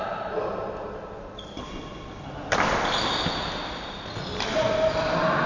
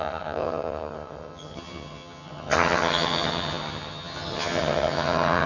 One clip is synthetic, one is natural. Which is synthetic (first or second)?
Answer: second